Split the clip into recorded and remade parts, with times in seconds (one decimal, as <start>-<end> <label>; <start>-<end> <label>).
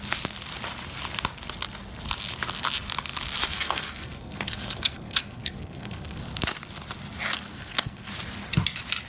0.0-3.5 recorded; 3.5-6.2 remade; 6.2-7.5 recorded; 7.5-8.1 remade; 8.1-9.1 recorded